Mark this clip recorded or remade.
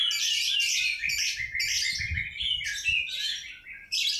recorded